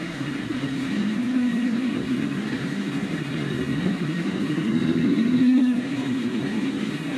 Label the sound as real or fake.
fake